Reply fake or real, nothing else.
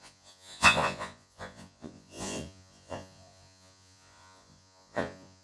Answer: fake